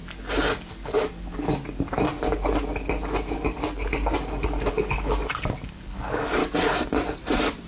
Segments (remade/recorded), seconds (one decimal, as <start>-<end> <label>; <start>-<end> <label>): 0.0-0.7 recorded; 0.7-1.6 remade; 1.6-4.7 recorded; 4.7-6.4 remade; 6.4-7.7 recorded